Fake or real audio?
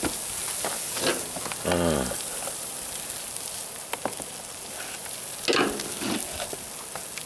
real